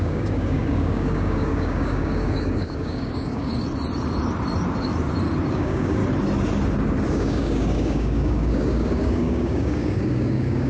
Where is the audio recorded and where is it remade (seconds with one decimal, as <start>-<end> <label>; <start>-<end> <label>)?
0.0-3.5 remade; 3.5-5.5 recorded; 5.5-6.0 remade; 6.0-7.1 recorded; 7.1-10.7 remade